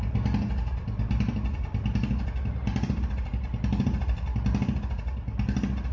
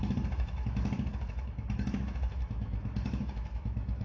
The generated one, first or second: second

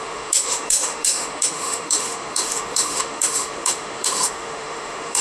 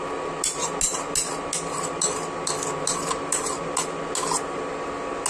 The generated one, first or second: first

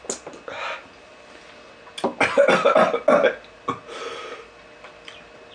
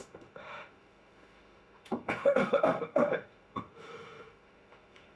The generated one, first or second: second